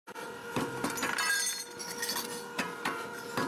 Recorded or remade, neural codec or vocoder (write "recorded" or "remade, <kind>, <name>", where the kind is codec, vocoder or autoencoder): recorded